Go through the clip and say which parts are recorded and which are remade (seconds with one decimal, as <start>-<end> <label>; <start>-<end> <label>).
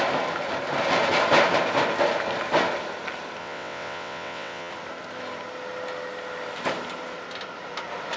0.0-3.4 recorded; 3.4-4.7 remade; 4.7-8.2 recorded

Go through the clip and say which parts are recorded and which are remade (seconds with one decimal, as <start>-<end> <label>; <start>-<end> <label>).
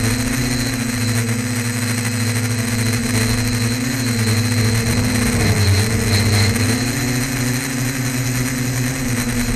0.0-9.6 recorded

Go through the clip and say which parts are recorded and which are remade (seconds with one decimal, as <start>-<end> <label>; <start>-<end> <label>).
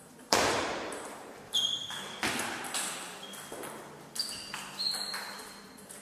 0.0-1.8 remade; 1.8-5.4 recorded; 5.4-6.0 remade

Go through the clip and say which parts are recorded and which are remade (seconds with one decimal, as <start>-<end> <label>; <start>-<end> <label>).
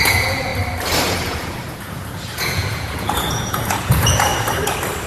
0.0-0.5 remade; 0.5-1.1 recorded; 1.1-4.3 remade; 4.3-5.1 recorded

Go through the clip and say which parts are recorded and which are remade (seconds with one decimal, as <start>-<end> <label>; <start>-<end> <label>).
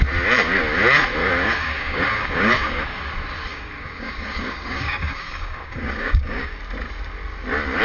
0.0-1.2 recorded; 1.2-3.1 remade; 3.1-3.5 recorded; 3.5-6.6 remade; 6.6-7.8 recorded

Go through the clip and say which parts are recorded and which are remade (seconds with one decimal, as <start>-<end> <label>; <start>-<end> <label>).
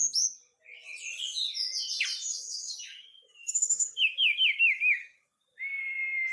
0.0-2.3 recorded; 2.3-5.6 remade; 5.6-6.3 recorded